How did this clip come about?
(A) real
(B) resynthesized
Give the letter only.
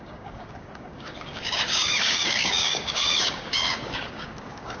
B